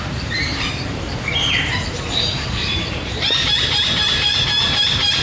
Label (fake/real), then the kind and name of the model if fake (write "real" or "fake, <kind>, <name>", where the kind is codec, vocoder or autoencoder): fake, vocoder, BigVGAN v2